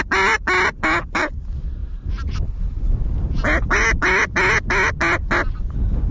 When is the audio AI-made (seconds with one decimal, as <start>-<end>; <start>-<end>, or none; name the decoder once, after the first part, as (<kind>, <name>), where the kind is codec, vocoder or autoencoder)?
none